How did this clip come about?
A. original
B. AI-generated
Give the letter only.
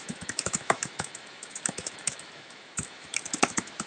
B